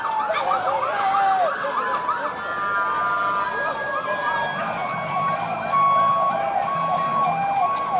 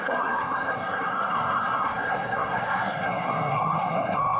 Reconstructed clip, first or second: second